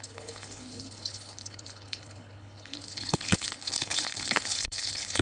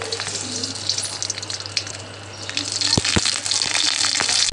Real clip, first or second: second